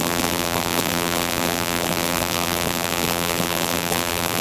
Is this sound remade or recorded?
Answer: remade